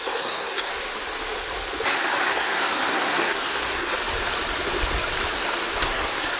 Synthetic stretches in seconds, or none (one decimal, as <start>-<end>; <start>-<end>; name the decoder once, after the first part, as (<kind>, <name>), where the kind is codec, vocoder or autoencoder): 0.0-0.7 (codec, SNAC); 2.3-3.9; 5.8-6.4